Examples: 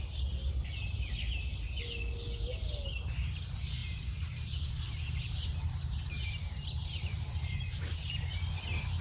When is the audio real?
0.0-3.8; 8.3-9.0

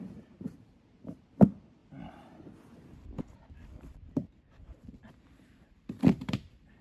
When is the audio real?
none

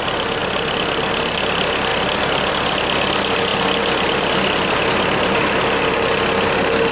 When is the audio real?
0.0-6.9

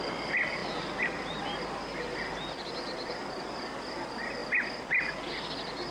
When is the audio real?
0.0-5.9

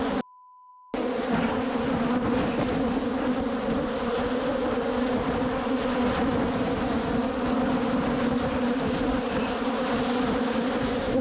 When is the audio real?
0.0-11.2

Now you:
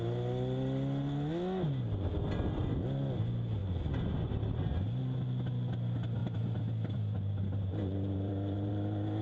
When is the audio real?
0.0-6.2; 8.7-9.2

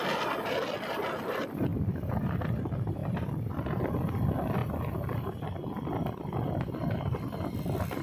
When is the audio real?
0.0-1.7; 2.5-3.0; 3.8-4.6; 5.9-8.0

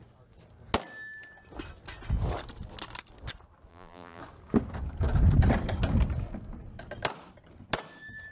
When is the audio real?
0.0-3.7; 4.2-8.3